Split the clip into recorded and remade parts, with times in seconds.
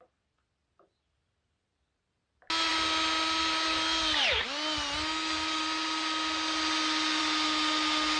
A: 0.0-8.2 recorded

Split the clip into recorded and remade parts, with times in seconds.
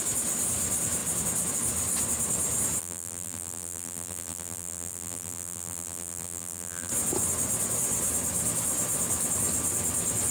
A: 0.0-2.8 recorded; 2.8-6.9 remade; 6.9-10.3 recorded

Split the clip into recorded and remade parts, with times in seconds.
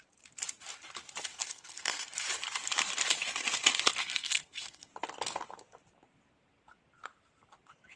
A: 0.0-1.3 recorded; 1.3-2.1 remade; 2.1-4.0 recorded; 4.0-4.9 remade; 4.9-8.0 recorded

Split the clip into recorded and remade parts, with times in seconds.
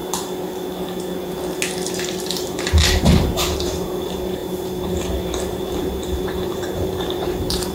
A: 0.0-1.9 recorded; 1.9-7.7 remade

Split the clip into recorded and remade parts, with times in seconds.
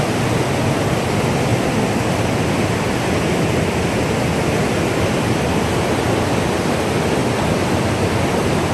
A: 0.0-8.7 recorded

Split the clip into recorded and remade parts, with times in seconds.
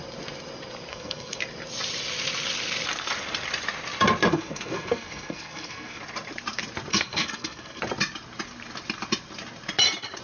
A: 0.0-0.9 recorded; 0.9-1.4 remade; 1.4-4.3 recorded; 4.3-6.0 remade; 6.0-6.9 recorded; 6.9-7.8 remade; 7.8-10.2 recorded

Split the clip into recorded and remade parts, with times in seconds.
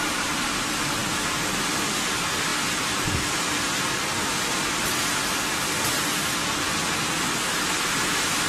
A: 0.0-1.0 remade; 1.0-1.7 recorded; 1.7-2.5 remade; 2.5-7.6 recorded; 7.6-8.5 remade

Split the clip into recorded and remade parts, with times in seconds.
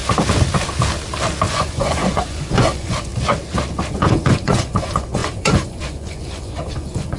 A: 0.0-1.5 recorded; 1.5-3.1 remade; 3.1-3.9 recorded; 3.9-7.2 remade